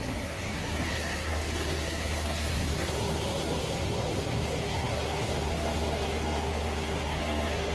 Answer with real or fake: fake